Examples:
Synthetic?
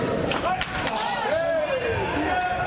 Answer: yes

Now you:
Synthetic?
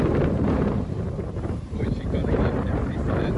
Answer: yes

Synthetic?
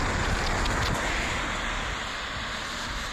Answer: no